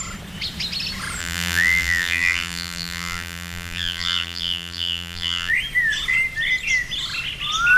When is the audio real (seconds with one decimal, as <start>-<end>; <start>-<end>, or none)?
0.0-1.2; 5.5-7.8